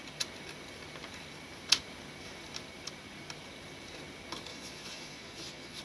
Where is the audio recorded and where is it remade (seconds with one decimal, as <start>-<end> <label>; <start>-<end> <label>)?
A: 0.0-4.5 recorded; 4.5-5.8 remade